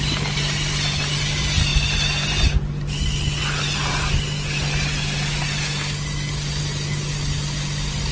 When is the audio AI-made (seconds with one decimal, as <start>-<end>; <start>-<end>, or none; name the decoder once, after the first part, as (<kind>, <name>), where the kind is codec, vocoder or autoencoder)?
none

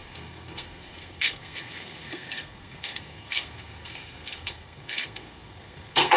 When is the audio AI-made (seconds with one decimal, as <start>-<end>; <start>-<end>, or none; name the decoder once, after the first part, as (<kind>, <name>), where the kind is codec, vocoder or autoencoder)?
0.0-6.2 (codec, SNAC)

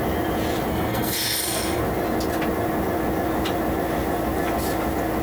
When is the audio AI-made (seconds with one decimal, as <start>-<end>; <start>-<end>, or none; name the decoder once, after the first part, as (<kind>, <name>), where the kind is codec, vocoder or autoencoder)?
0.7-1.8 (codec, SNAC)

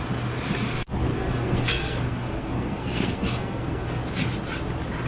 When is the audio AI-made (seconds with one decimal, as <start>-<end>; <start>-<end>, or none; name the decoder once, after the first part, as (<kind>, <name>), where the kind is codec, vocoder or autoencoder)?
1.1-4.0 (codec, SNAC)

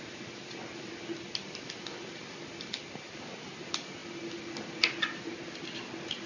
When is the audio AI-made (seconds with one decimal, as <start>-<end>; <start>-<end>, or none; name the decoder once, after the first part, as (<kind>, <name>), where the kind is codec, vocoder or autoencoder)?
none

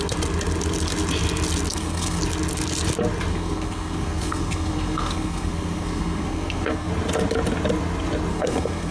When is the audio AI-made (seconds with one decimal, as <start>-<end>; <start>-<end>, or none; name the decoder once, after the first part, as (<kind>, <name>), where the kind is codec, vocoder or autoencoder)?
1.7-2.2 (codec, SNAC); 3.3-6.9; 8.3-8.9

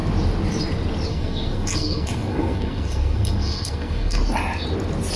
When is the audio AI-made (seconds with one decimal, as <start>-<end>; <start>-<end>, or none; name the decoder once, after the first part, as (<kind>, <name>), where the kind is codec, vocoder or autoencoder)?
1.1-4.2 (codec, SNAC)